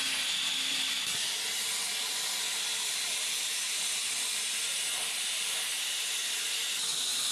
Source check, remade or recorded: recorded